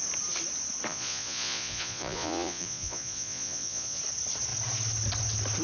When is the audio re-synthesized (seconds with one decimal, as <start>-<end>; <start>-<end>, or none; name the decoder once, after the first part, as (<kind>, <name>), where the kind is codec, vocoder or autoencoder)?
0.9-4.0 (vocoder, Vocos)